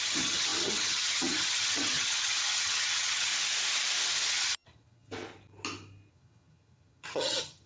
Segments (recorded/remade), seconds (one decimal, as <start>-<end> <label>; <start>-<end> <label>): 0.0-3.3 remade; 3.3-4.3 recorded; 4.3-5.1 remade; 5.1-6.1 recorded; 6.1-7.7 remade